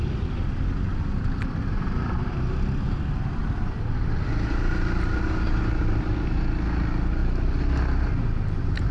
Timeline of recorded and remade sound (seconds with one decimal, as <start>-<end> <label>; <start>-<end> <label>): 0.0-8.9 recorded